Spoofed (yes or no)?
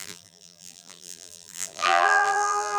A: yes